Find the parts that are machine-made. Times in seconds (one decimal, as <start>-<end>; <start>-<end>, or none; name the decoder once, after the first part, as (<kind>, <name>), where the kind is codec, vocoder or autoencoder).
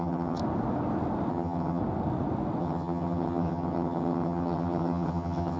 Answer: 0.0-0.4 (vocoder, HiFi-GAN); 1.3-1.8; 2.6-5.6